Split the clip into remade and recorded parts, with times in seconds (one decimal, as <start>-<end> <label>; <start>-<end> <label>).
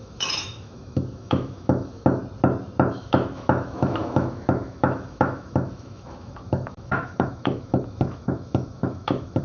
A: 0.0-2.2 remade; 2.2-2.9 recorded; 2.9-9.4 remade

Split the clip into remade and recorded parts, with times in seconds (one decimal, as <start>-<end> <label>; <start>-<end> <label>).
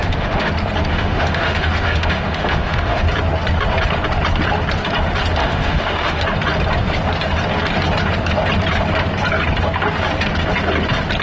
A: 0.0-0.5 remade; 0.5-0.9 recorded; 0.9-3.0 remade; 3.0-5.4 recorded; 5.4-6.2 remade; 6.2-11.2 recorded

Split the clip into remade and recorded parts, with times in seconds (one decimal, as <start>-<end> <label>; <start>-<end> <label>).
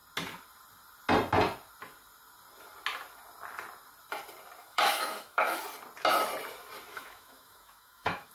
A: 0.0-4.6 recorded; 4.6-5.6 remade; 5.6-6.9 recorded; 6.9-8.3 remade